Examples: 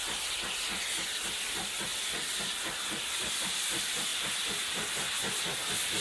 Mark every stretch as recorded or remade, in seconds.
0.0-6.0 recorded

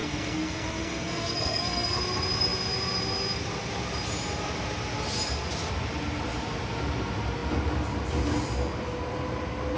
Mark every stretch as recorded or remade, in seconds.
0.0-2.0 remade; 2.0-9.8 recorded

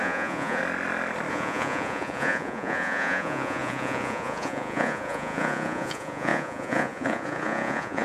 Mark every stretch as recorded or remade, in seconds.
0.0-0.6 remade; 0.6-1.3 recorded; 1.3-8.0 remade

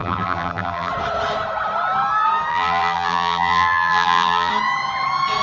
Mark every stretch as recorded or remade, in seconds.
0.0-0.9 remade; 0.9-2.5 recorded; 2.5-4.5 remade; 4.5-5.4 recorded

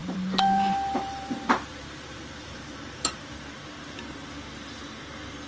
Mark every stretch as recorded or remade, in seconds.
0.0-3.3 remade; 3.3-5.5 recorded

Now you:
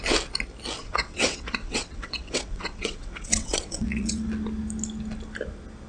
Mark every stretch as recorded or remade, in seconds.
0.0-0.8 recorded; 0.8-4.3 remade; 4.3-5.9 recorded

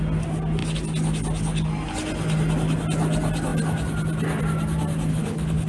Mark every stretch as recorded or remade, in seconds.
0.0-5.1 recorded; 5.1-5.7 remade

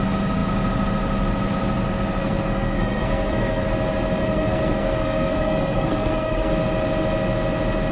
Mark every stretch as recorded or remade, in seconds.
0.0-2.2 recorded; 2.2-3.7 remade; 3.7-4.2 recorded; 4.2-6.5 remade; 6.5-7.9 recorded